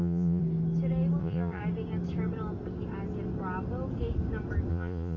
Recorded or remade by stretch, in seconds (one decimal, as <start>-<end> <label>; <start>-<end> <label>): 0.0-0.4 remade; 0.4-1.2 recorded; 1.2-1.6 remade; 1.6-4.7 recorded; 4.7-5.2 remade